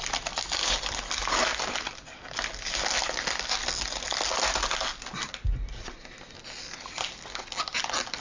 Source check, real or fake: real